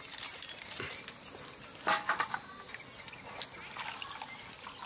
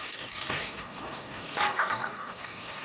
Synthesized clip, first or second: second